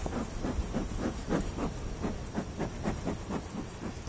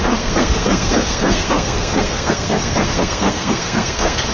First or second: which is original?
first